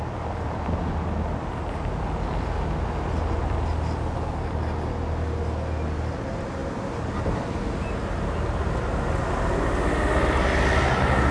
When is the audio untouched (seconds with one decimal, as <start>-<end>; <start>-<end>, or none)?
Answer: 0.0-11.3